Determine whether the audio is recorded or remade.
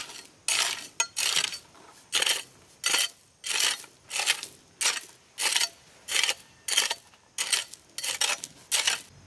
recorded